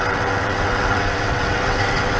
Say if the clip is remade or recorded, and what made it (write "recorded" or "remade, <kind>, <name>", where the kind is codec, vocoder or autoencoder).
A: remade, vocoder, WaveNeXt